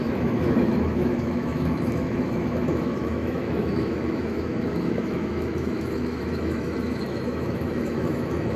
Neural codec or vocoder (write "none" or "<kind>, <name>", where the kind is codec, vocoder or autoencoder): autoencoder, DAC-VAE